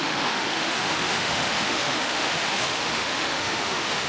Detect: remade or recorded remade